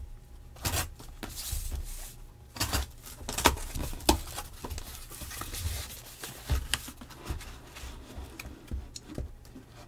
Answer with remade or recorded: recorded